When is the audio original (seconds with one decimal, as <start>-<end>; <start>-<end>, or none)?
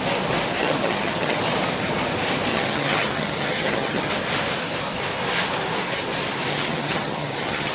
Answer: 0.0-0.6; 1.4-2.5; 4.1-6.5